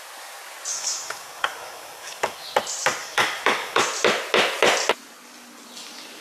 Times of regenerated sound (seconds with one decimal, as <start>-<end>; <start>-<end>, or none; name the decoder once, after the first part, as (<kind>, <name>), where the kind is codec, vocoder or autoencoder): 0.7-2.6 (codec, DAC); 3.0-3.8